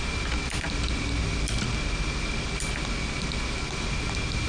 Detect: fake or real real